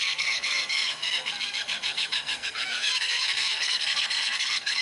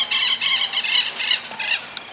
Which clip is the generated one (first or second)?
first